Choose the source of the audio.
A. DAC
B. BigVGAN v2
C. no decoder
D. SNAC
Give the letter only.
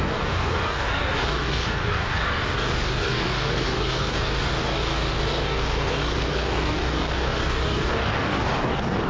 A